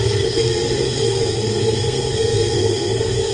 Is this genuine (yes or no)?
no